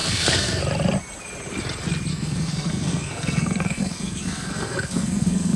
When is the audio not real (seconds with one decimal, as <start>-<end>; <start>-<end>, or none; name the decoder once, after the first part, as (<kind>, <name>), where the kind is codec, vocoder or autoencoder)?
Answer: 0.0-0.6 (codec, SNAC); 2.1-5.6